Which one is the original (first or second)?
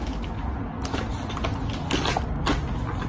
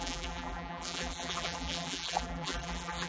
first